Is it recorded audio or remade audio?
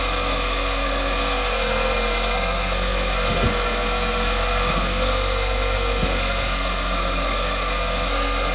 remade